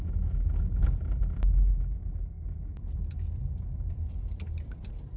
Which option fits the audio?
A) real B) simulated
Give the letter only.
A